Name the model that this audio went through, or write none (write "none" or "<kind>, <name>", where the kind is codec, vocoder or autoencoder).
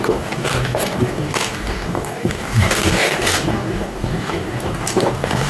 codec, DAC